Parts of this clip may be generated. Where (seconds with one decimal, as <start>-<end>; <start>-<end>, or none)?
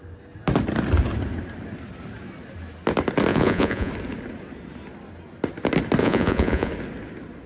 3.3-3.9; 6.0-6.7